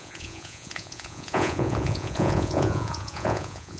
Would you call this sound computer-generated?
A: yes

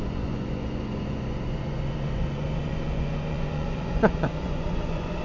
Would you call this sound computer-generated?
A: yes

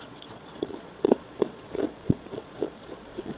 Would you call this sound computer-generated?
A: yes